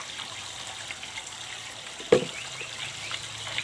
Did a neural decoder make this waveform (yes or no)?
no